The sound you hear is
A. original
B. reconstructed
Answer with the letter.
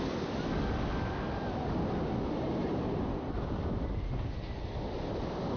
A